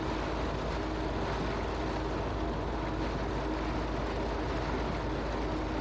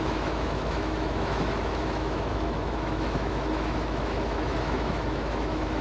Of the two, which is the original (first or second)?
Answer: first